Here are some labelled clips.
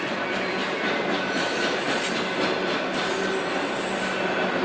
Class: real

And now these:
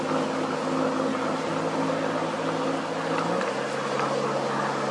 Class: real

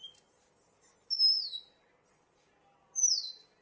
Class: real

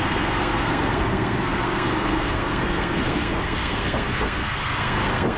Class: fake